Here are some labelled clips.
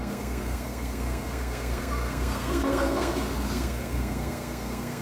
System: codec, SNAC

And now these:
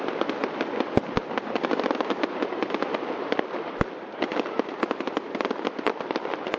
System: none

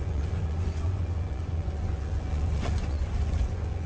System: vocoder, Vocos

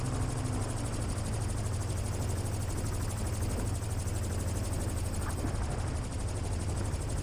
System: none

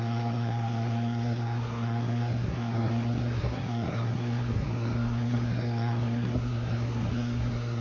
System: codec, SNAC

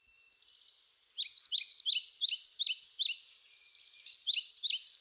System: none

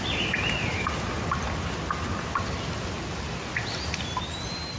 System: none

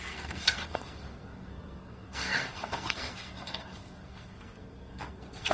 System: codec, SNAC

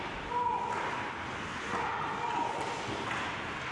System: none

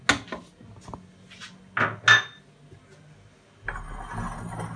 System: none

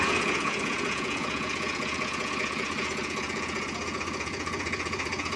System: vocoder, Vocos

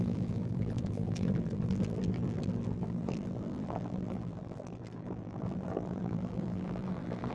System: vocoder, BigVGAN v2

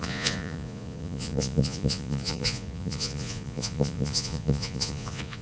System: vocoder, Vocos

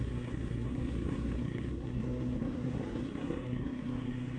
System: codec, SNAC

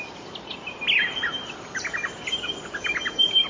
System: none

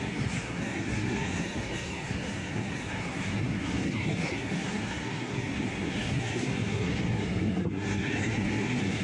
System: codec, SNAC